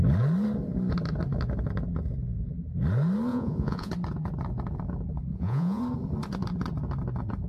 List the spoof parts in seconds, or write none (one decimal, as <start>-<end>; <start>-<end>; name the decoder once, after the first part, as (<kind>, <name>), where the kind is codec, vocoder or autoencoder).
3.3-3.9 (vocoder, Vocos); 5.3-5.8